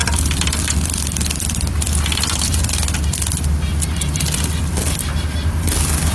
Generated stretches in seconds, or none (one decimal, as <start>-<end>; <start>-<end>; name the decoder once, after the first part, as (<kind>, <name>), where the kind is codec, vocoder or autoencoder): 0.0-2.6 (vocoder, BigVGAN v2); 3.7-4.6